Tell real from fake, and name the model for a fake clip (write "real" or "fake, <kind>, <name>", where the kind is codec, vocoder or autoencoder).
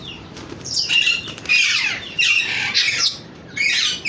fake, vocoder, BigVGAN v2